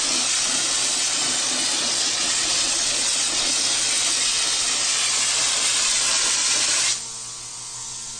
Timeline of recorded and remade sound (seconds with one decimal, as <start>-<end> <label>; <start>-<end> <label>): 0.0-1.9 recorded; 1.9-3.5 remade; 3.5-8.2 recorded